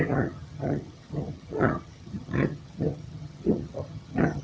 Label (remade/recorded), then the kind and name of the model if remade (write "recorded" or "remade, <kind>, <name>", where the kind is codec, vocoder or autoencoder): remade, vocoder, HiFi-GAN